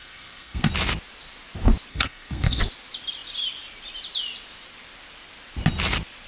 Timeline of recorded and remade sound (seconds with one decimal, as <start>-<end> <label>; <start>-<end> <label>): 0.0-0.7 remade; 0.7-1.9 recorded; 1.9-2.6 remade; 2.6-6.3 recorded